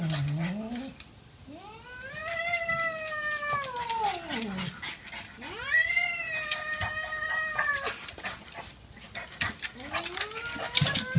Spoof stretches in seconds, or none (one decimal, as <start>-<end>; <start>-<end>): none